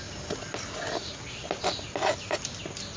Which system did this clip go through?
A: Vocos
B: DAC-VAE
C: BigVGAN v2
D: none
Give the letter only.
D